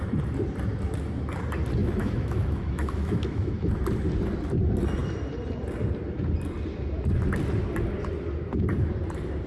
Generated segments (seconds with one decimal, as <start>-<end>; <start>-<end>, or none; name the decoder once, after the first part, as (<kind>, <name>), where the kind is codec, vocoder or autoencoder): 1.8-3.7 (autoencoder, DAC-VAE)